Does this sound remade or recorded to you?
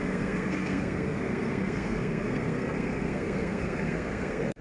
remade